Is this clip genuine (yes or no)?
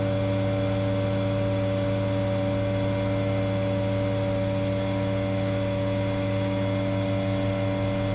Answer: yes